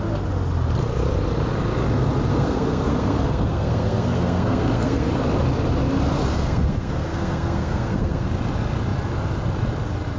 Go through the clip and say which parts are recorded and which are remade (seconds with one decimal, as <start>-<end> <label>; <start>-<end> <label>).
0.0-2.3 recorded; 2.3-5.1 remade; 5.1-6.3 recorded; 6.3-8.3 remade; 8.3-10.2 recorded